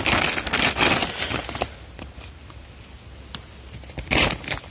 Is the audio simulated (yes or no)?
no